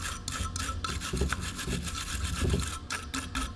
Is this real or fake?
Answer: real